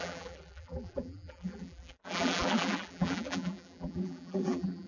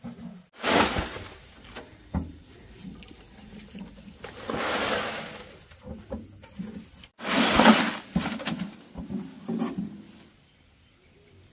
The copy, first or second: first